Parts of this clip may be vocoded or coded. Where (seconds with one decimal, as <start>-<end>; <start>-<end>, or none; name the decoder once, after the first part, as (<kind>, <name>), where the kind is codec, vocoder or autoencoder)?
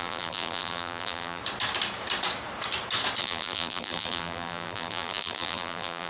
0.0-1.4 (vocoder, BigVGAN v2); 3.2-6.1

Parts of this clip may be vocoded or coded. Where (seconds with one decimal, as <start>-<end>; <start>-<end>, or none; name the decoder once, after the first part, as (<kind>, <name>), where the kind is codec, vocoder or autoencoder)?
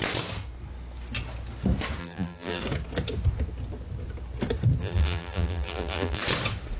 2.0-2.6 (vocoder, BigVGAN v2); 4.8-6.2